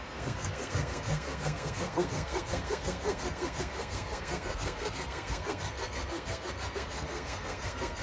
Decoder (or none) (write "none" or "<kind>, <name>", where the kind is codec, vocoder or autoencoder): codec, SNAC